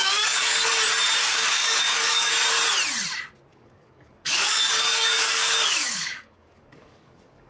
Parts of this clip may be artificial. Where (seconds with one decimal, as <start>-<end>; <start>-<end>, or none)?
0.0-0.7; 1.2-2.3; 3.5-7.5